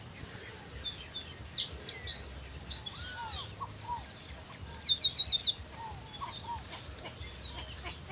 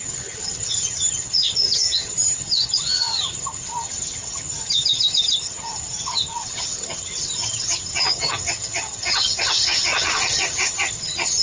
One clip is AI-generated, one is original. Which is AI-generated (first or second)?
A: second